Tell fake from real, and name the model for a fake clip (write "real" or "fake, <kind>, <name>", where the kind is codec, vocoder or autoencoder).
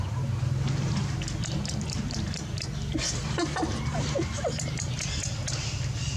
real